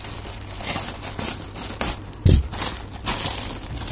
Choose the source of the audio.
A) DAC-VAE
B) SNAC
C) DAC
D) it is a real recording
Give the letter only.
D